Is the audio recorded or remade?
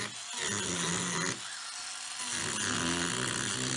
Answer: recorded